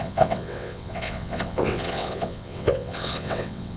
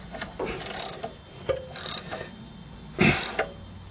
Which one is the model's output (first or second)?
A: first